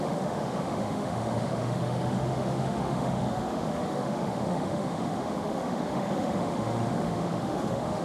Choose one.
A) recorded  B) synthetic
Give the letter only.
B